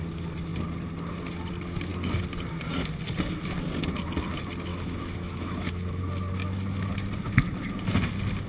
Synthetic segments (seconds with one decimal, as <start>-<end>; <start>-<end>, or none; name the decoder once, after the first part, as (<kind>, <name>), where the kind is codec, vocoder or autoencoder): 4.7-6.0 (autoencoder, DAC-VAE)